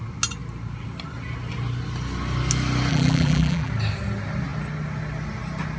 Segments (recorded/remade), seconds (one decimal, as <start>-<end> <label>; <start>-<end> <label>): 0.0-2.9 recorded; 2.9-3.7 remade; 3.7-5.8 recorded

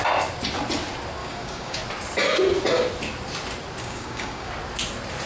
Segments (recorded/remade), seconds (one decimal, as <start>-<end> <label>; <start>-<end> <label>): 0.0-1.2 recorded; 1.2-1.8 remade; 1.8-3.8 recorded; 3.8-4.5 remade; 4.5-5.3 recorded

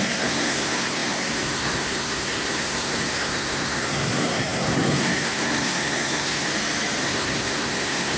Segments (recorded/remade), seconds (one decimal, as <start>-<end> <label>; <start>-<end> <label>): 0.0-6.5 remade; 6.5-7.0 recorded; 7.0-8.2 remade

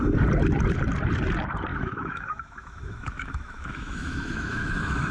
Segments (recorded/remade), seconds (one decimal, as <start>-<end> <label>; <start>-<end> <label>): 0.0-1.7 recorded; 1.7-5.1 remade

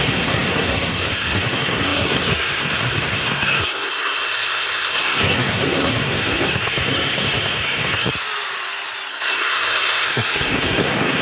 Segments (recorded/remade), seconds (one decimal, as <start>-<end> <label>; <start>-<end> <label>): 0.0-8.1 remade; 8.1-9.1 recorded; 9.1-11.2 remade